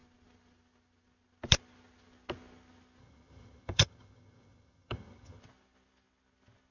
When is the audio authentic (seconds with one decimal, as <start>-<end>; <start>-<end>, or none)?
0.0-3.0; 5.4-6.7